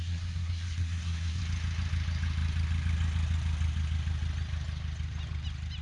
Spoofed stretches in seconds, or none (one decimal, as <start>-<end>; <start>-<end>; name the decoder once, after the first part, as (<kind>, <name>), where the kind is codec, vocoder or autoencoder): 0.0-1.4 (codec, SNAC)

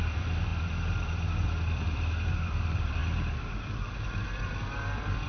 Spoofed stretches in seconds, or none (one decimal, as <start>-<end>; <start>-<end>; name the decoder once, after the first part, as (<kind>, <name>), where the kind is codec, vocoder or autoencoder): 0.0-5.3 (vocoder, BigVGAN v2)

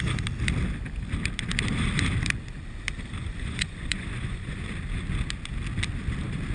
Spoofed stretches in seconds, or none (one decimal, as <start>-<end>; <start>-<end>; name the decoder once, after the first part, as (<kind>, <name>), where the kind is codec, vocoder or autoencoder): 3.2-4.6 (vocoder, Vocos)

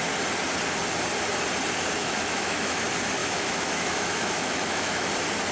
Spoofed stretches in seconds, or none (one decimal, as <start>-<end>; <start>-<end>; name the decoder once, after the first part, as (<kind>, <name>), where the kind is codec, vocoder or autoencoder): 2.0-2.8 (autoencoder, DAC-VAE); 3.2-5.1

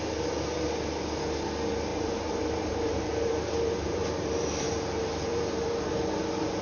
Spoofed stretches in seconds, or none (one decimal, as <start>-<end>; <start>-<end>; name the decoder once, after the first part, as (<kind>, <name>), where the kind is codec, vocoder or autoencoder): 1.9-5.9 (vocoder, BigVGAN v2)